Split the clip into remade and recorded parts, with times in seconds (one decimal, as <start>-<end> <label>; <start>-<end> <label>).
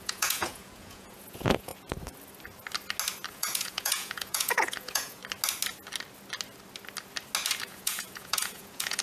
0.0-1.7 remade; 1.7-3.3 recorded; 3.3-5.2 remade; 5.2-7.6 recorded; 7.6-9.0 remade